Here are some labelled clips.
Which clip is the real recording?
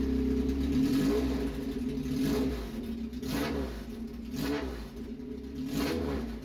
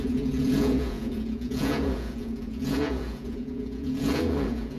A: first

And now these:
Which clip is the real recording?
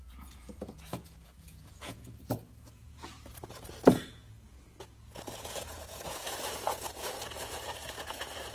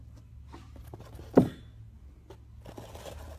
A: second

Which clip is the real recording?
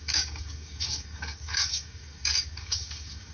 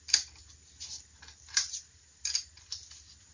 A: second